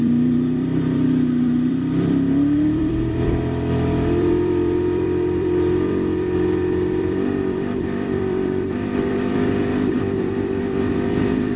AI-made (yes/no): yes